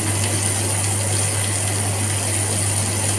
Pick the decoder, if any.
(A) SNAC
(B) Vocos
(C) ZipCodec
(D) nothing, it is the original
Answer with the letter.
D